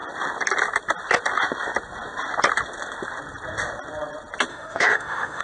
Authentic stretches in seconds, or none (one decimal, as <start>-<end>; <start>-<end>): 0.0-4.5